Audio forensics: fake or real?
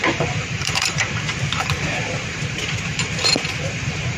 fake